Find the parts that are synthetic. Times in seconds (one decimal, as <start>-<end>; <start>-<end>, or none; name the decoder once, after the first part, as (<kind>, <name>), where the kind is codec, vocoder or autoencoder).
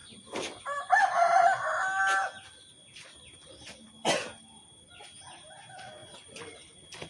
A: none